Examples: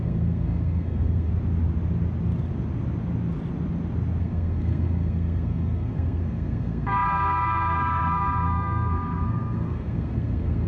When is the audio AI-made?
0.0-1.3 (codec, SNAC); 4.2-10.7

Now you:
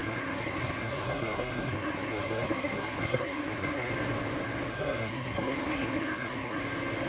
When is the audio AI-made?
0.0-3.9 (codec, SNAC); 4.7-6.6

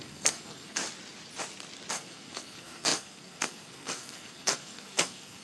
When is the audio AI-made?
0.0-0.8 (codec, SNAC); 1.9-5.4

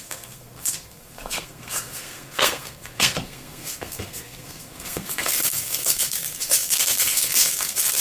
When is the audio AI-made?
0.0-8.0 (codec, SNAC)

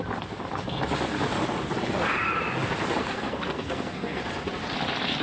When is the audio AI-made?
3.0-4.2 (codec, SNAC)

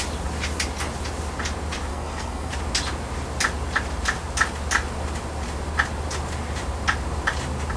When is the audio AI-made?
1.9-2.5 (codec, SNAC)

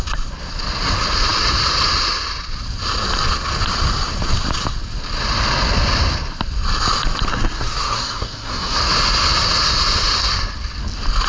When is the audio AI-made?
7.3-8.8 (codec, SNAC)

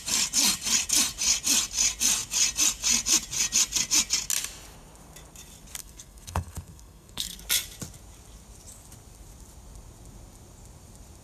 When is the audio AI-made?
5.8-7.4 (codec, SNAC)